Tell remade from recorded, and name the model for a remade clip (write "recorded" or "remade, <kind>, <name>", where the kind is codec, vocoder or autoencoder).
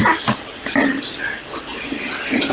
remade, vocoder, BigVGAN v2